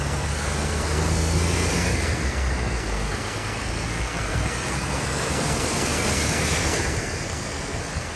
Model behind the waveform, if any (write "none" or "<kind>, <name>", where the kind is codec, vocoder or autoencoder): codec, SNAC